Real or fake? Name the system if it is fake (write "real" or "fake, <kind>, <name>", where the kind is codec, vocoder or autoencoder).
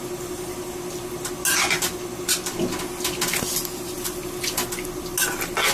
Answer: real